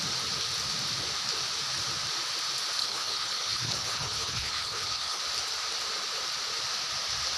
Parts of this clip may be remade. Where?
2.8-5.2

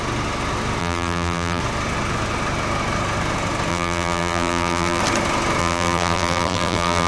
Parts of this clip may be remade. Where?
0.8-1.6; 3.7-5.0; 5.6-7.1

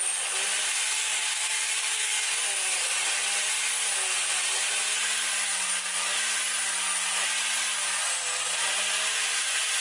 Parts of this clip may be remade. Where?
1.0-2.9

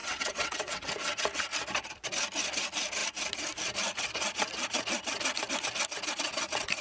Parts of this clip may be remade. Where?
0.0-0.9

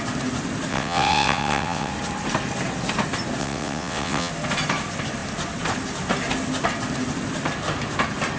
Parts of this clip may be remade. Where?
0.7-1.9; 3.4-4.3